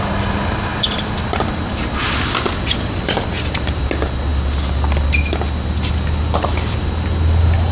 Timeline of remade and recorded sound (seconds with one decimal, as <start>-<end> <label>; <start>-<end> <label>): 0.0-7.7 recorded